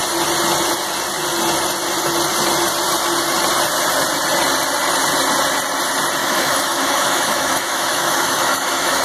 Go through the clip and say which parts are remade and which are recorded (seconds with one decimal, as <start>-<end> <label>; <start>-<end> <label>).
0.0-6.2 recorded; 6.2-9.0 remade